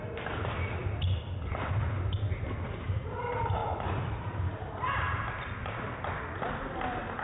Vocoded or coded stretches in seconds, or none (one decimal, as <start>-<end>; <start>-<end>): none